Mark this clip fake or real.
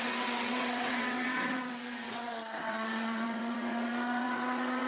fake